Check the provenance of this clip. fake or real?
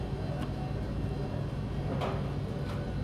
real